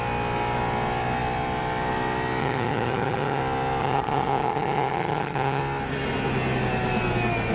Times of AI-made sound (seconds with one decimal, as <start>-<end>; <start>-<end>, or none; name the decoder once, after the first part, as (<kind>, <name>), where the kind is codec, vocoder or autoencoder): 2.4-3.4 (vocoder, HiFi-GAN); 3.8-5.6